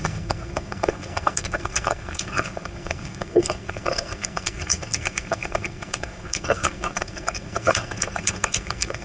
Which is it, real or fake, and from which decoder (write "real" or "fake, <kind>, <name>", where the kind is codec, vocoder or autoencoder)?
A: fake, codec, SNAC